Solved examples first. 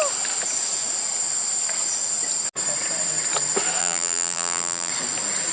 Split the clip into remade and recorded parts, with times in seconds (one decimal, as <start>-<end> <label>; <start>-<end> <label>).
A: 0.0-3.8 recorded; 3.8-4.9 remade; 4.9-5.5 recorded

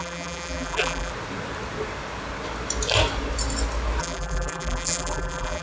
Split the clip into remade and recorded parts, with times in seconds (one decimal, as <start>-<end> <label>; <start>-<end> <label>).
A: 0.0-1.1 remade; 1.1-4.0 recorded; 4.0-5.6 remade

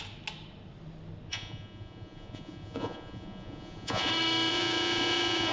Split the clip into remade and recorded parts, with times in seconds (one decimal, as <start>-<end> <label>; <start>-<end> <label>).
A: 0.0-1.3 recorded; 1.3-4.1 remade; 4.1-4.5 recorded; 4.5-5.5 remade